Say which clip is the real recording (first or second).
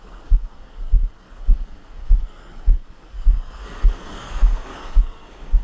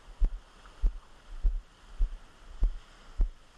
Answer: second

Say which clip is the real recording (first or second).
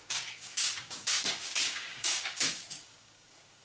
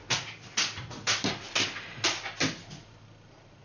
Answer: second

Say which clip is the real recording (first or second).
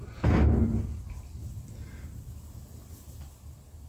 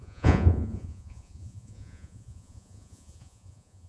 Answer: first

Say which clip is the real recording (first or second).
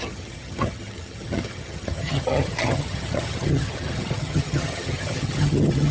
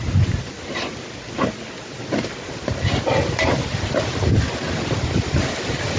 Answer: second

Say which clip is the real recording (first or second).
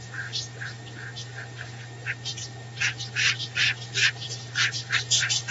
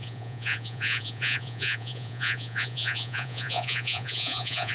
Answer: first